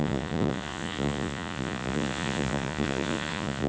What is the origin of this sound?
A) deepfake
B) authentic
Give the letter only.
A